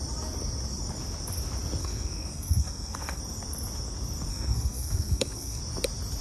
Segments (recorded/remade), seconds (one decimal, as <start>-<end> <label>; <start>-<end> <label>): 0.0-1.8 recorded; 1.8-3.2 remade; 3.2-4.3 recorded; 4.3-5.6 remade; 5.6-6.2 recorded